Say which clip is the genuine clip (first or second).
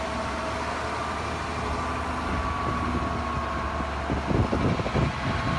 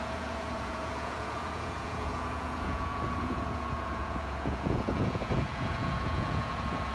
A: first